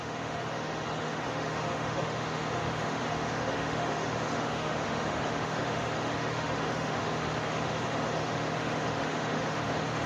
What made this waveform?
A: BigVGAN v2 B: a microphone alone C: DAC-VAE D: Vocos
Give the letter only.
C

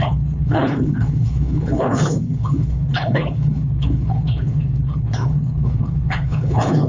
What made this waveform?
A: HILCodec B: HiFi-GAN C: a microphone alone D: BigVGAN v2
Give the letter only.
A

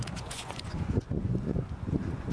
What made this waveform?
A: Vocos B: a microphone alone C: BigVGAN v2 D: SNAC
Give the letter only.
A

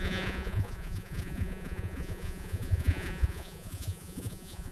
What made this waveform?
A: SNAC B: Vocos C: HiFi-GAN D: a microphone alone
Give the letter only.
B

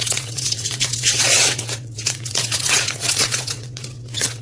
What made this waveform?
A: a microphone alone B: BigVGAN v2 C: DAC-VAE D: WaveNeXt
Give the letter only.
D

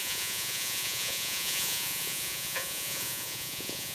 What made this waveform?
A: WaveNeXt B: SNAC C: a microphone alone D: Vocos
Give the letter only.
D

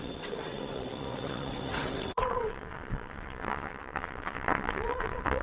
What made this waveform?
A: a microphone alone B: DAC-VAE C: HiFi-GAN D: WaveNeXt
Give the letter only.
D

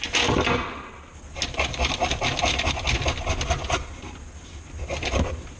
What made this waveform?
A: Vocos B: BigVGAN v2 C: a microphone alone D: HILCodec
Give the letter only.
C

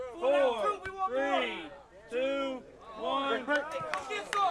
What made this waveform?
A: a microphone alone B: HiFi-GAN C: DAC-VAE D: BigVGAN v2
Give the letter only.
A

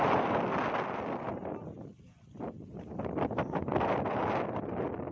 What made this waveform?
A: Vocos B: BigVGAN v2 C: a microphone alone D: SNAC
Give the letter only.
C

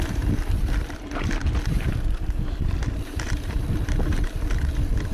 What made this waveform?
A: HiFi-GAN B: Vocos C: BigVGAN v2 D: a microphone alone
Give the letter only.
C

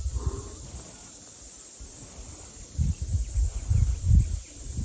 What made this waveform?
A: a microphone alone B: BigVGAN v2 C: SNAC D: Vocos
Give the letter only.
B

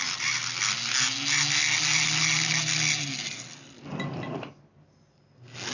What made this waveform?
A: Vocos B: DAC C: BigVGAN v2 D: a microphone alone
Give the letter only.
D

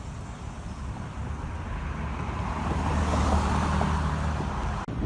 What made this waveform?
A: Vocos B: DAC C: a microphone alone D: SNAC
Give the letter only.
C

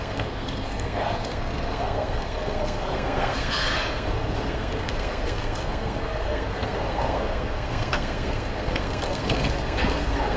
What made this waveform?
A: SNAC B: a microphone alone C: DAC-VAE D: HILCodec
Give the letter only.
A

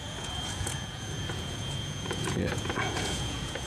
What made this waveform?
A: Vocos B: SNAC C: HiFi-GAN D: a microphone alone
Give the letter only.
A